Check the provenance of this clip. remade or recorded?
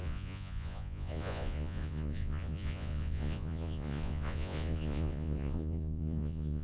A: remade